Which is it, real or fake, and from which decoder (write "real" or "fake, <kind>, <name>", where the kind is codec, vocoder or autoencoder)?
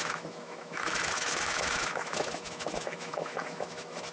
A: fake, autoencoder, DAC-VAE